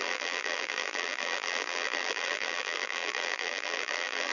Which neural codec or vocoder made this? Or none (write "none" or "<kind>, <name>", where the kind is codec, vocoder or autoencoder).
vocoder, BigVGAN v2